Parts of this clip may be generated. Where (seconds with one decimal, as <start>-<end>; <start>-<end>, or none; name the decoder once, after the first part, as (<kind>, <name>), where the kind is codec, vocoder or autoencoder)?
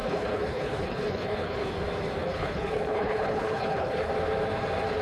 0.0-1.7 (codec, HILCodec); 2.2-4.1